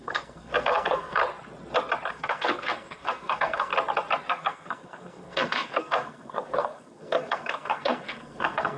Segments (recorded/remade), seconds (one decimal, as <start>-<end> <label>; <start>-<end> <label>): 0.0-1.2 remade; 1.2-2.1 recorded; 2.1-3.7 remade; 3.7-4.3 recorded; 4.3-8.8 remade